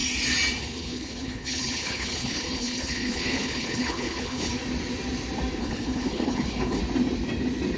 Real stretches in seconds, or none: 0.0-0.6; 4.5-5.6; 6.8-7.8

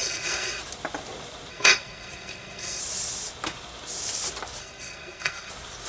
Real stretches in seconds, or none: 0.6-1.5; 2.8-4.6; 5.5-5.9

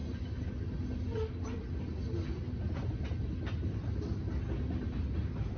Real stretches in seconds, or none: 0.0-5.6

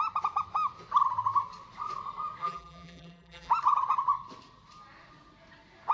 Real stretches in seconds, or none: 0.0-2.4; 3.5-5.9

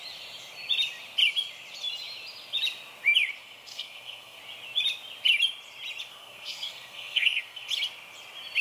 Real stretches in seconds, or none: 0.0-3.4; 4.4-6.1; 7.7-8.6

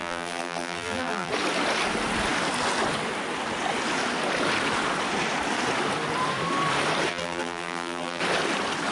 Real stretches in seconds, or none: 1.3-7.1; 8.2-8.9